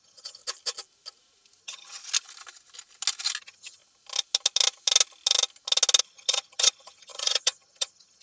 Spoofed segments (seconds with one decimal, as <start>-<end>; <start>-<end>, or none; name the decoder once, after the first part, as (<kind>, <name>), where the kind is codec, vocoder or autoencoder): 0.0-0.4 (vocoder, HiFi-GAN); 1.6-2.0; 3.4-3.8; 6.0-8.2